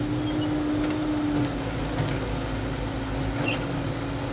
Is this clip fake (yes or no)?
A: no